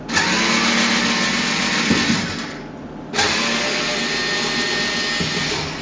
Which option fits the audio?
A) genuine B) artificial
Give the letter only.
A